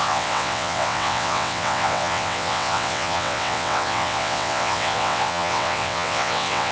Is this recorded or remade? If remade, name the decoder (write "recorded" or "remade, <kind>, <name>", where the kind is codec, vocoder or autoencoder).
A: remade, vocoder, WaveNeXt